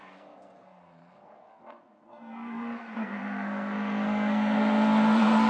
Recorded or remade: remade